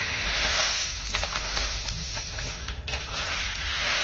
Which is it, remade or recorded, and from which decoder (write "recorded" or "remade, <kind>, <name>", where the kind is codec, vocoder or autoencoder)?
remade, autoencoder, DAC-VAE